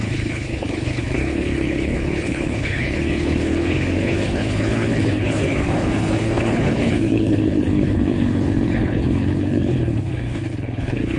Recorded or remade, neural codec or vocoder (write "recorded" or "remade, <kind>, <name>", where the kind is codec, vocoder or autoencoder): remade, codec, HILCodec